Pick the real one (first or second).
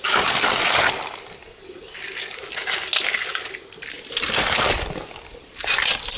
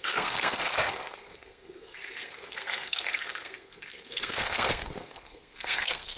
first